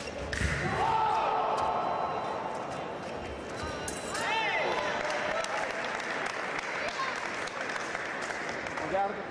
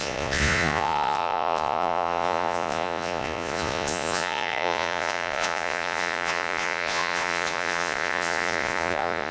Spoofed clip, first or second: second